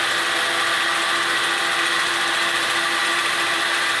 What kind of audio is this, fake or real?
real